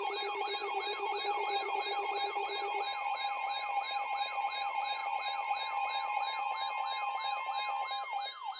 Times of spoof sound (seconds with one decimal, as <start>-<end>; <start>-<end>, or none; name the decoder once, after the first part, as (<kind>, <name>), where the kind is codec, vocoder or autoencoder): 0.6-1.8 (vocoder, BigVGAN v2)